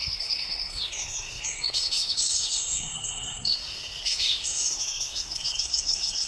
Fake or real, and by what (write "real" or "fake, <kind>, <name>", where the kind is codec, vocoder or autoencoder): fake, codec, SNAC